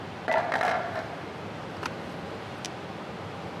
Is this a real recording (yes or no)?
yes